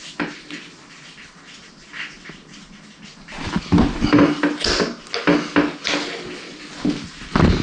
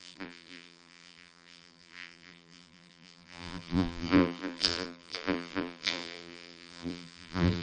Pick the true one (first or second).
first